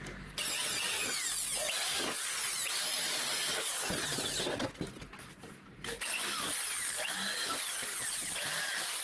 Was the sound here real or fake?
real